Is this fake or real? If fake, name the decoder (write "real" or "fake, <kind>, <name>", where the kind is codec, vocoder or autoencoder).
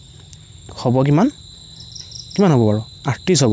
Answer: fake, vocoder, BigVGAN v2